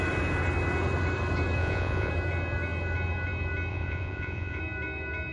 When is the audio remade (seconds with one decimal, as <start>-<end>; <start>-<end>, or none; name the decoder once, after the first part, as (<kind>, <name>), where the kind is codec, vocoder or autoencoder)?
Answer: 1.6-2.1 (vocoder, Vocos); 3.7-4.6